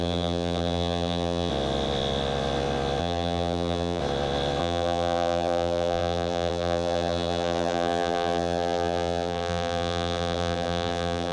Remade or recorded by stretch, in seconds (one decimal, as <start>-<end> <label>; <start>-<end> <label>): 0.0-1.5 remade; 1.5-3.0 recorded; 3.0-4.0 remade; 4.0-4.6 recorded; 4.6-11.3 remade